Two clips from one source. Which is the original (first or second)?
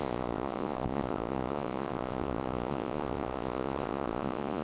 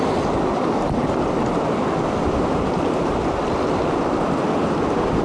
second